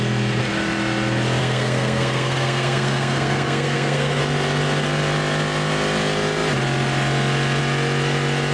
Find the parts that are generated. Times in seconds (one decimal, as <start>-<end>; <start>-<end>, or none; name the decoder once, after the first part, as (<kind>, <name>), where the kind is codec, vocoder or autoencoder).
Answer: 1.4-4.2 (codec, SNAC)